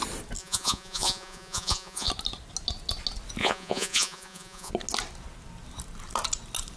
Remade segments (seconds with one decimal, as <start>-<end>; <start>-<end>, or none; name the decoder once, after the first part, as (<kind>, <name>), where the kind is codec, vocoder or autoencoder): 0.4-2.1 (vocoder, Vocos); 3.4-4.7